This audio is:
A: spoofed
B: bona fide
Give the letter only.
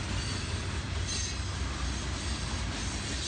B